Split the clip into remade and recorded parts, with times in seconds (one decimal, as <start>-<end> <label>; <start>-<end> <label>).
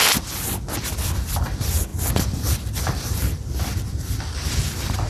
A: 0.0-0.9 recorded; 0.9-5.1 remade